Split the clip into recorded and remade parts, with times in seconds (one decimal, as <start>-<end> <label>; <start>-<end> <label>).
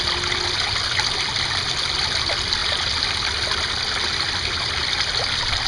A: 0.0-5.7 recorded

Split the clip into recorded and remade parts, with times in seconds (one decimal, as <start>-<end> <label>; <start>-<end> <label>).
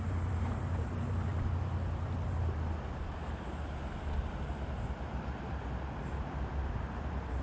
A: 0.0-1.3 remade; 1.3-5.2 recorded; 5.2-7.4 remade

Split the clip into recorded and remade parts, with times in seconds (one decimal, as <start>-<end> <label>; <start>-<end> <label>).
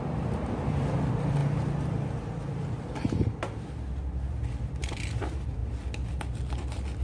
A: 0.0-1.4 remade; 1.4-3.7 recorded; 3.7-5.6 remade; 5.6-6.5 recorded; 6.5-7.0 remade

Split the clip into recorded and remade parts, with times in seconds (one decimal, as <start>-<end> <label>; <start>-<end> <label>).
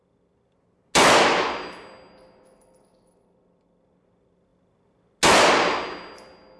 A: 0.0-6.6 recorded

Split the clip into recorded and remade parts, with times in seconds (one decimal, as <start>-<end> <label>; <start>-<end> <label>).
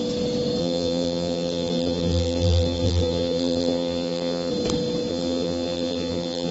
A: 0.0-0.6 recorded; 0.6-4.5 remade; 4.5-5.1 recorded; 5.1-6.5 remade